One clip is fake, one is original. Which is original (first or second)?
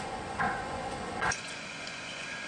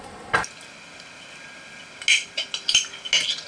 second